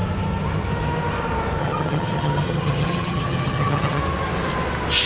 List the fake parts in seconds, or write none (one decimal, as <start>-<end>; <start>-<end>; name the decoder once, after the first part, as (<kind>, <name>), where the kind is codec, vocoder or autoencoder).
1.6-4.0 (vocoder, HiFi-GAN)